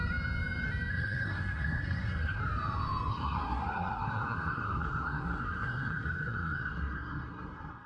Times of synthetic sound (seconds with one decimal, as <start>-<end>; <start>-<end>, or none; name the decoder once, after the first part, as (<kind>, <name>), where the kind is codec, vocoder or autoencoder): 0.9-2.4 (codec, SNAC); 3.1-7.9